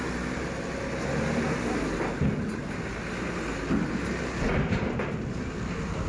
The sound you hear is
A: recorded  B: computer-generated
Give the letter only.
A